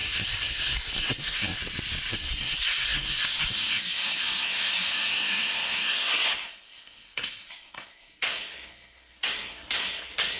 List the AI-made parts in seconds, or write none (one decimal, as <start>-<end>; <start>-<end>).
0.0-1.6; 2.1-10.4

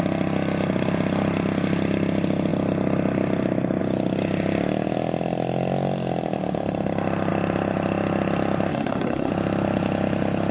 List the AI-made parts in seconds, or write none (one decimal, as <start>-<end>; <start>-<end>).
8.7-9.3

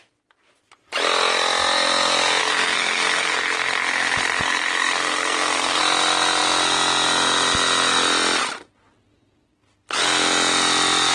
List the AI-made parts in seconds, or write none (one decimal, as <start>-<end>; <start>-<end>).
2.4-5.8

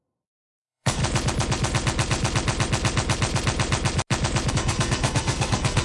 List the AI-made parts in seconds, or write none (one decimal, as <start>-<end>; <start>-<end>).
0.0-1.0; 4.5-5.8

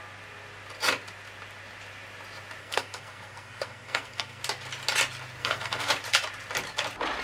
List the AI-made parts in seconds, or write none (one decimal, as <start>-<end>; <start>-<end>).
2.6-4.4; 5.4-5.9

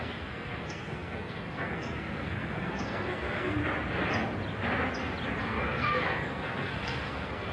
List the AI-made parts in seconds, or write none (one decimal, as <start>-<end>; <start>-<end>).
0.0-3.6; 5.4-7.5

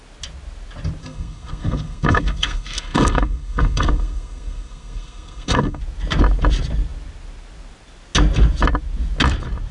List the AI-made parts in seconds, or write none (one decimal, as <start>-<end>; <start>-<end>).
1.0-5.8